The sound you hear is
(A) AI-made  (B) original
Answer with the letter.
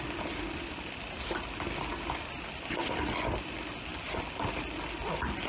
B